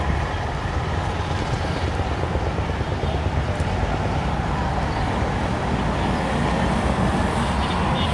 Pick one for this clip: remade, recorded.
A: recorded